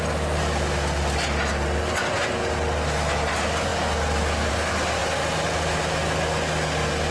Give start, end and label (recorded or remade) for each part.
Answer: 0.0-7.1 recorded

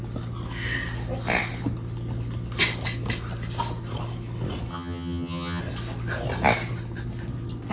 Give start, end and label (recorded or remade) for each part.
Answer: 0.0-4.7 recorded; 4.7-5.6 remade; 5.6-7.7 recorded